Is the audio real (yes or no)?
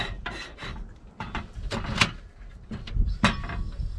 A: yes